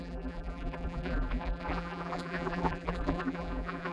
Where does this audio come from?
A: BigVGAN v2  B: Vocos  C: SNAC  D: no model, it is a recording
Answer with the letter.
A